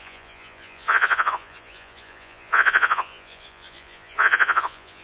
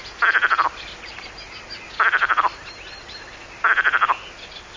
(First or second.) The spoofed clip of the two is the first